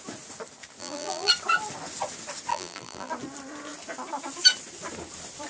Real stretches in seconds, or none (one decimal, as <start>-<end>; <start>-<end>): 0.0-0.8; 1.3-2.5; 3.1-5.5